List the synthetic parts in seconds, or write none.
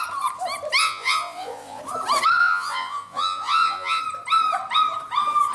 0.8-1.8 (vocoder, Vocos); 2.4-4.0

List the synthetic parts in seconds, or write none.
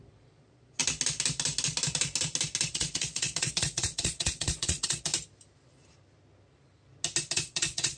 0.0-0.8 (vocoder, Vocos); 2.7-5.1; 7.3-8.0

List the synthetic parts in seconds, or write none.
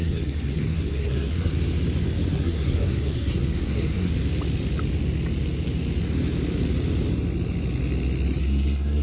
0.0-1.5 (codec, SNAC); 2.3-4.1; 8.4-9.0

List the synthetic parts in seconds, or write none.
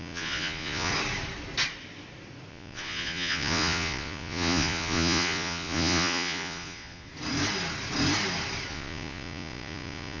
0.0-0.9 (vocoder, Vocos); 2.5-7.1; 8.7-10.2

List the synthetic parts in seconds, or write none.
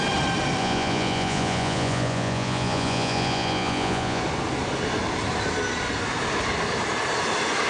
0.6-4.2 (vocoder, Vocos)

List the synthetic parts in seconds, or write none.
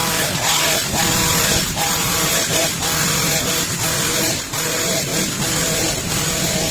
2.1-2.6 (vocoder, BigVGAN v2); 3.5-5.1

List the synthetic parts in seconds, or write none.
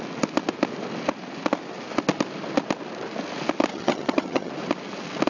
3.7-4.5 (vocoder, HiFi-GAN)